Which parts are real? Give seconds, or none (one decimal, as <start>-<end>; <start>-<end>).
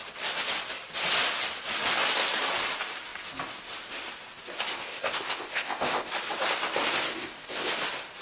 0.0-4.7; 6.1-7.1; 7.7-8.2